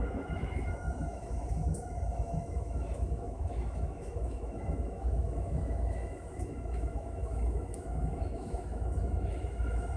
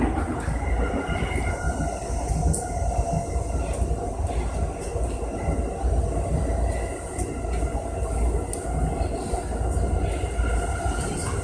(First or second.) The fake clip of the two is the first